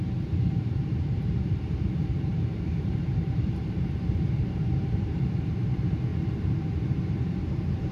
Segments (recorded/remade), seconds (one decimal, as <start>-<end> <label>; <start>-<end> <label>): 0.0-7.9 remade